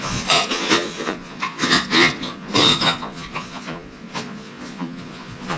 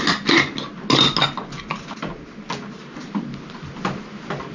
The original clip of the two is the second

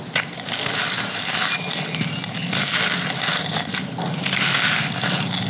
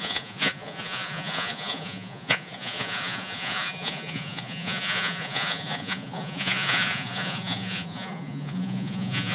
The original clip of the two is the first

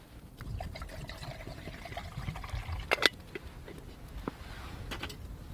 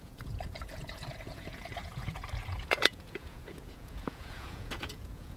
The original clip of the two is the first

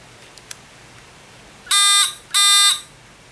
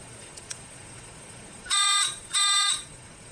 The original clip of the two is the first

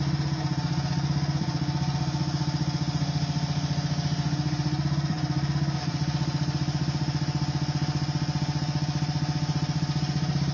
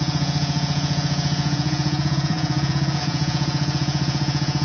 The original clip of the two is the first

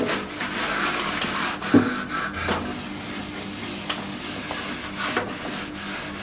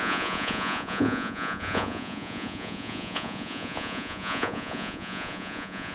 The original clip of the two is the first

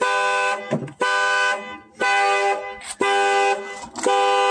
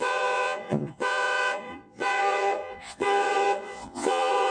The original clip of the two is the first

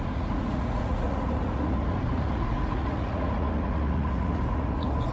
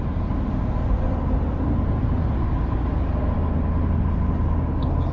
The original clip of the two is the second